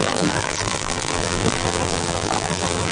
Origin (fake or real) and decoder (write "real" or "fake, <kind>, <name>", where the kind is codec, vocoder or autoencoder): fake, vocoder, BigVGAN v2